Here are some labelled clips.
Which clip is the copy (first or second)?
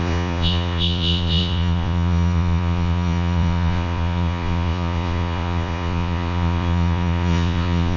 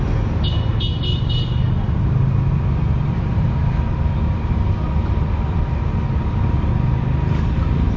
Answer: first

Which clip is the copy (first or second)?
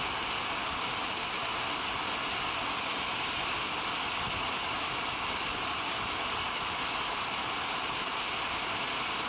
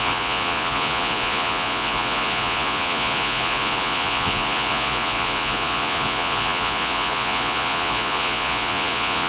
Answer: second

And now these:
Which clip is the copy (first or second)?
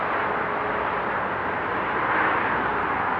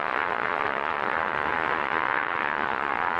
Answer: second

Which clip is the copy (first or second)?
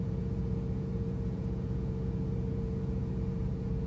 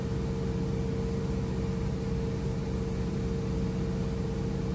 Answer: first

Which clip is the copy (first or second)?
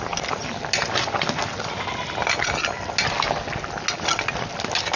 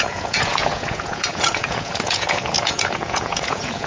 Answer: second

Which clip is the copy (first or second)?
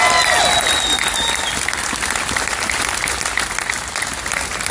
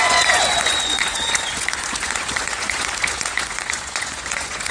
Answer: second